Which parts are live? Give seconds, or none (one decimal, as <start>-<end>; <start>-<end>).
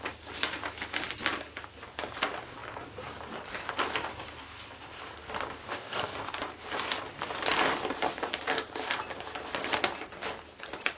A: 0.0-5.7; 6.3-11.0